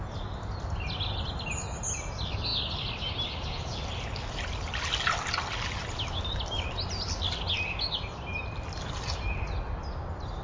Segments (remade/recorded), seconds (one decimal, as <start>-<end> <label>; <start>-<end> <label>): 0.0-10.4 recorded